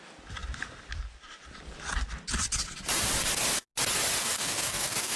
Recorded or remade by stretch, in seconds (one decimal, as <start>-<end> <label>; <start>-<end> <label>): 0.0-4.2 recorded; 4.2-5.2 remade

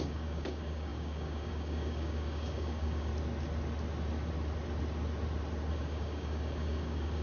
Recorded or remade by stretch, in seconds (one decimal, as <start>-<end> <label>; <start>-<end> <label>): 0.0-3.1 remade; 3.1-5.7 recorded; 5.7-7.2 remade

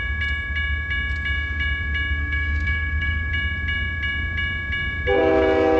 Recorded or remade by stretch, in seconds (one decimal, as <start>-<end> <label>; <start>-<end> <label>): 0.0-2.2 recorded; 2.2-3.3 remade; 3.3-5.8 recorded

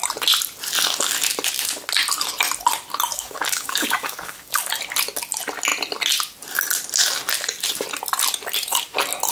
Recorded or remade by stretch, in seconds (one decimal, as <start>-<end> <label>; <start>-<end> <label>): 0.0-3.1 recorded; 3.1-4.7 remade; 4.7-9.3 recorded

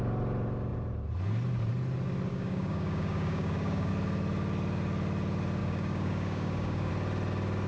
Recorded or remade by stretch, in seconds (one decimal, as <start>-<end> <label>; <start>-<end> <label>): 0.0-2.3 recorded; 2.3-3.9 remade; 3.9-5.6 recorded; 5.6-6.9 remade; 6.9-7.7 recorded

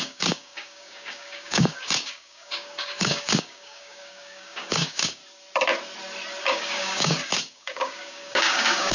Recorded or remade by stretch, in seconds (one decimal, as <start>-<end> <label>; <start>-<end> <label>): 0.0-5.2 remade; 5.2-6.4 recorded; 6.4-8.9 remade

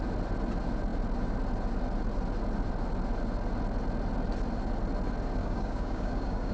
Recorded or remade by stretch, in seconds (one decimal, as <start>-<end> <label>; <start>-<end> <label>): 0.0-5.4 recorded; 5.4-6.5 remade